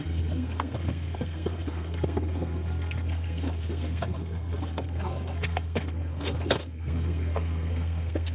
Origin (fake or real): fake